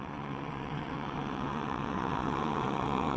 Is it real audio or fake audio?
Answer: fake